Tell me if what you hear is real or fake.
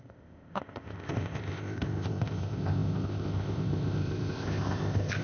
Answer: fake